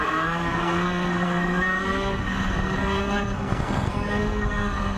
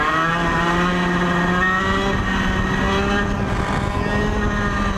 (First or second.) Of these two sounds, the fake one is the first